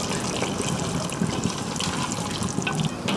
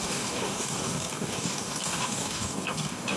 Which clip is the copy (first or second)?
second